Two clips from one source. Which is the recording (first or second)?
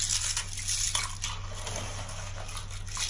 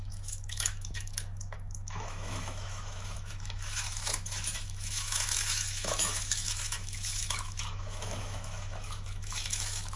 first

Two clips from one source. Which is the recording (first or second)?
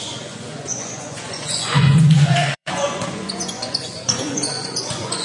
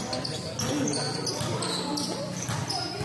second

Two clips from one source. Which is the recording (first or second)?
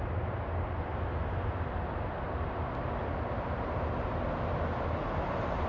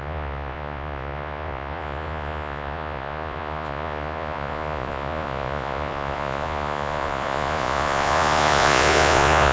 first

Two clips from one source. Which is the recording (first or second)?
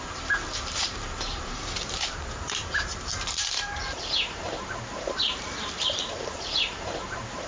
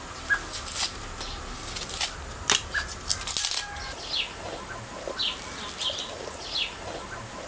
second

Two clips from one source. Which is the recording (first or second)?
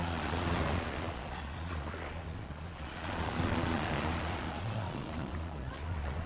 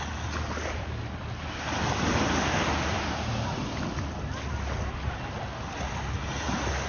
second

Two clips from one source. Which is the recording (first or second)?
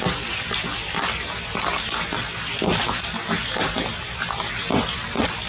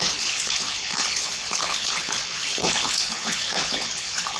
first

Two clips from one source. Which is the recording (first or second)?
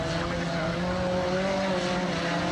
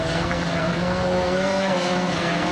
first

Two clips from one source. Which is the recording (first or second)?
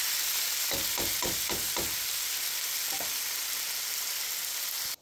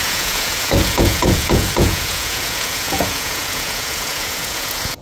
first